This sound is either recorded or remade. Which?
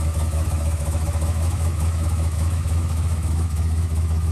remade